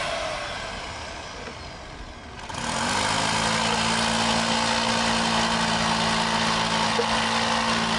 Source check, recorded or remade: recorded